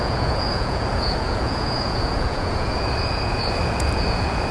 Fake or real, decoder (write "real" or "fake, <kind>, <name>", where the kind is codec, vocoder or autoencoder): fake, vocoder, Vocos